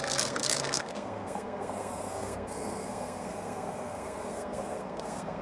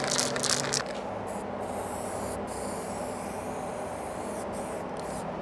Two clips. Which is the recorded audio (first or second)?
second